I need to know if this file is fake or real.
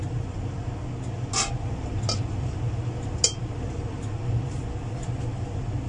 real